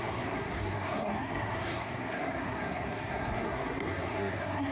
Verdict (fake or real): fake